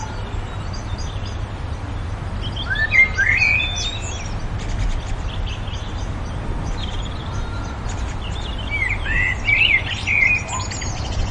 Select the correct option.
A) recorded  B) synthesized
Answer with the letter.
A